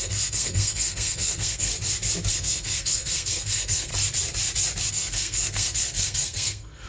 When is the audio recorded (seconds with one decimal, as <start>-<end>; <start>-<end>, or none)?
1.7-2.3; 3.9-4.9